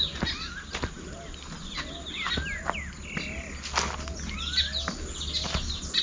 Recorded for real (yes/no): yes